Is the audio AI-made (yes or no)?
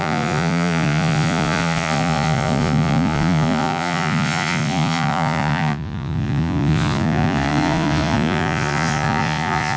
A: yes